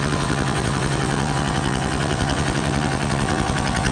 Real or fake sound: fake